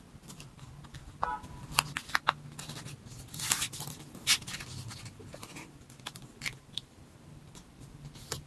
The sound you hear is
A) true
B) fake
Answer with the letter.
A